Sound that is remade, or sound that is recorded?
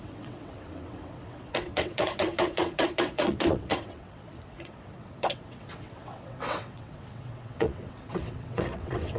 remade